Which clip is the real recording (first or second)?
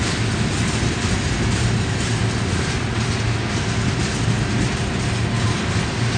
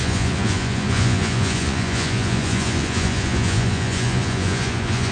first